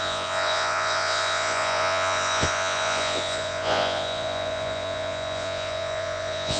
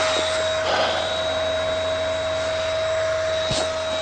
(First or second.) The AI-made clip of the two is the first